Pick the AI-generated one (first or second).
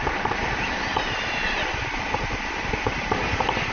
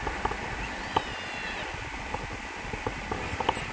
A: first